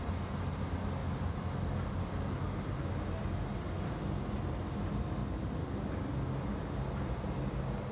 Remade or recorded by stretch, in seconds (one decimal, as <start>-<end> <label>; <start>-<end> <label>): 0.0-7.9 recorded